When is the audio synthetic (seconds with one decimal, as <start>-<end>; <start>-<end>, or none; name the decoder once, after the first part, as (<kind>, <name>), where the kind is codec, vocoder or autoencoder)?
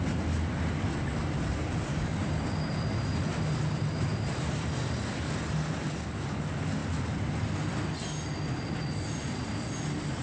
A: 1.9-2.7 (codec, DAC)